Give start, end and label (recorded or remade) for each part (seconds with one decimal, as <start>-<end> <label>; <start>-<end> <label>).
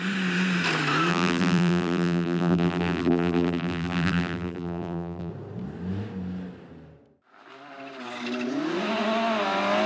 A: 0.0-1.1 recorded; 1.1-5.3 remade; 5.3-9.9 recorded